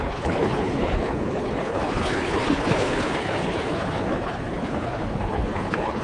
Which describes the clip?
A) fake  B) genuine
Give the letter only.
A